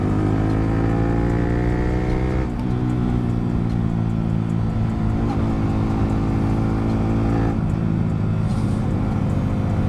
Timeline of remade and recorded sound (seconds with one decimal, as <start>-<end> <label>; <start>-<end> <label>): 0.0-8.5 recorded; 8.5-9.2 remade; 9.2-9.9 recorded